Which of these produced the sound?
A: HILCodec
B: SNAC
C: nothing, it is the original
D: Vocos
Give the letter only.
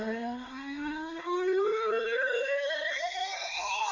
B